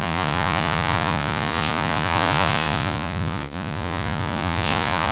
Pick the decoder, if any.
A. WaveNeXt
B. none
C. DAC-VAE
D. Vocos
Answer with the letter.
D